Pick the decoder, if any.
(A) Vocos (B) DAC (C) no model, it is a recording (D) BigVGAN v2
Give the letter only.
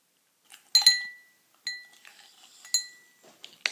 C